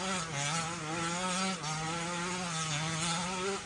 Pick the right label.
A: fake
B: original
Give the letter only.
B